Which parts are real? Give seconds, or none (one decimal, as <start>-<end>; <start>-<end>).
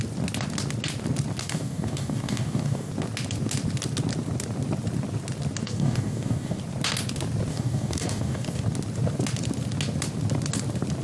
0.0-1.4; 2.9-5.6; 6.6-7.5; 8.6-11.0